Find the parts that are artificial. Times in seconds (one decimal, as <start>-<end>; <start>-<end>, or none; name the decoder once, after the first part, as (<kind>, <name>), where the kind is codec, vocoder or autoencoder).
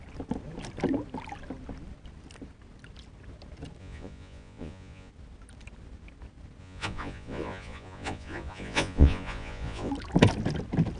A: 3.8-5.1 (vocoder, Vocos); 6.6-9.9